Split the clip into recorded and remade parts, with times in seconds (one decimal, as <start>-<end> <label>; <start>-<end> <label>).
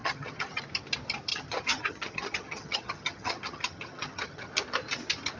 0.0-0.6 remade; 0.6-1.3 recorded; 1.3-4.5 remade; 4.5-5.4 recorded